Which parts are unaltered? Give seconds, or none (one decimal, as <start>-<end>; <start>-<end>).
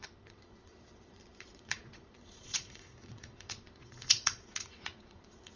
none